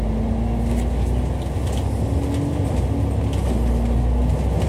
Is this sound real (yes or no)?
yes